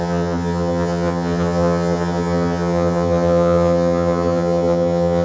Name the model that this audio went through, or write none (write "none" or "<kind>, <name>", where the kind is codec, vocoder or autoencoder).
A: vocoder, HiFi-GAN